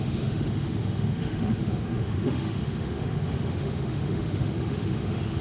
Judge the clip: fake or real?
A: fake